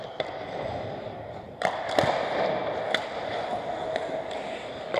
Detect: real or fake real